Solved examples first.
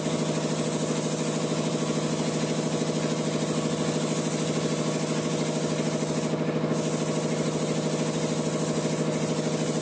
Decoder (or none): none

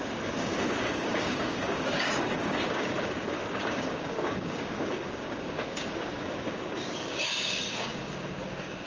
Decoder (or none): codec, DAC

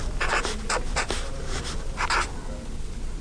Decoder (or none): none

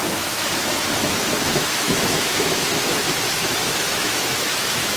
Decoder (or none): autoencoder, DAC-VAE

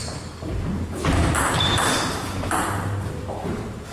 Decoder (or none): vocoder, BigVGAN v2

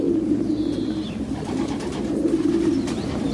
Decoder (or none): none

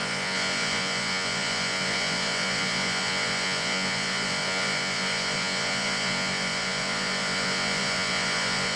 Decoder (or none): vocoder, Vocos